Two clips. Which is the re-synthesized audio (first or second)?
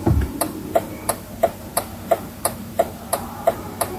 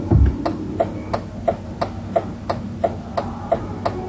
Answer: first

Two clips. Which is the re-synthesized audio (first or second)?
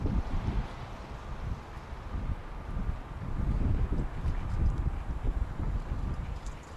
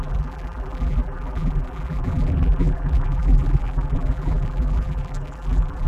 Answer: second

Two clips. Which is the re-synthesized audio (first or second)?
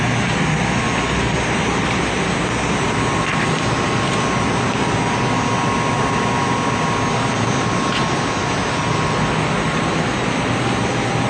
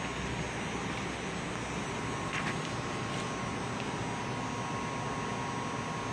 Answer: first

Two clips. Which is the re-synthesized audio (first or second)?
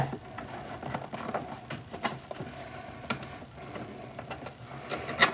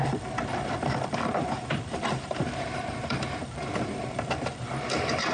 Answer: second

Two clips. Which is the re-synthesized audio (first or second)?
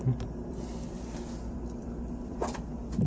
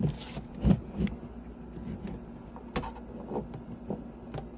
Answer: first